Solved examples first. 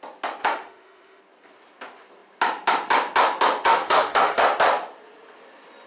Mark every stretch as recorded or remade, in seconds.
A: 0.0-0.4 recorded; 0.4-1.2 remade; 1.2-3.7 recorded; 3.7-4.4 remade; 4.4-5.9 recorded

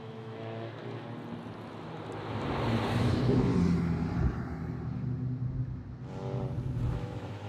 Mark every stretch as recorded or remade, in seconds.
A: 0.0-0.8 remade; 0.8-3.0 recorded; 3.0-3.5 remade; 3.5-6.9 recorded; 6.9-7.5 remade

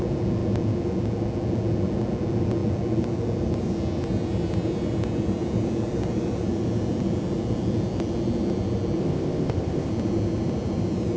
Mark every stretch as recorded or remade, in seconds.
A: 0.0-9.0 recorded; 9.0-9.9 remade; 9.9-11.2 recorded

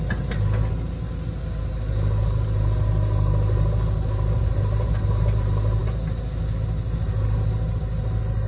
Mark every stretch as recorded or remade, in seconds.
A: 0.0-8.5 recorded